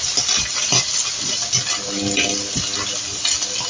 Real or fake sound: real